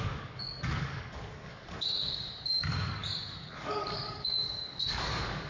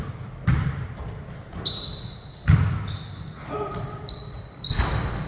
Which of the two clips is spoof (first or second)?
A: first